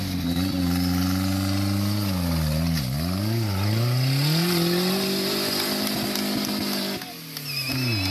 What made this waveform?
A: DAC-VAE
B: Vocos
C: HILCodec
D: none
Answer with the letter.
D